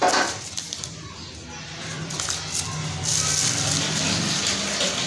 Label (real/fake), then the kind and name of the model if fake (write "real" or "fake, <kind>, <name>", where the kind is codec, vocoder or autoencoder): real